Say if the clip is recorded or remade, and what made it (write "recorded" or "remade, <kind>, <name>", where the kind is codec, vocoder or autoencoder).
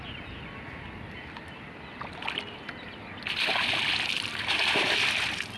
recorded